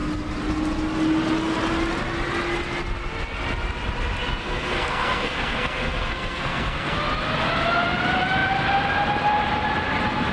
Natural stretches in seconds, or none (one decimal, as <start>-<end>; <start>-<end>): 0.0-4.2; 7.0-10.3